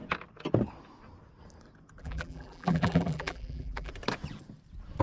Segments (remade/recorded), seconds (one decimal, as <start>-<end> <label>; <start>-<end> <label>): 0.0-2.0 recorded; 2.0-3.9 remade; 3.9-5.0 recorded